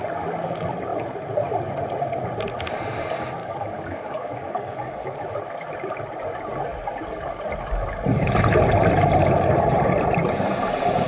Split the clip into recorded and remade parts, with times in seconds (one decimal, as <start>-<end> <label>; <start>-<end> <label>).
0.0-3.4 recorded; 3.4-5.2 remade; 5.2-11.1 recorded